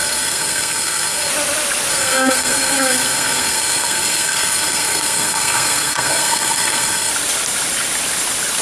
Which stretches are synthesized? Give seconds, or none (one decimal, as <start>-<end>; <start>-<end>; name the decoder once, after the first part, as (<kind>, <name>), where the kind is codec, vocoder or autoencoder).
0.0-1.3 (codec, SNAC); 1.9-7.1